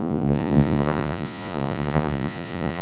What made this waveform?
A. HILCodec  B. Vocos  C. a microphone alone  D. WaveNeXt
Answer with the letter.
B